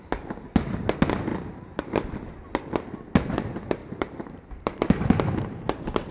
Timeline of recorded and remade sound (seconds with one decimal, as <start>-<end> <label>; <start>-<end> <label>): 0.0-3.8 recorded; 3.8-5.0 remade; 5.0-6.1 recorded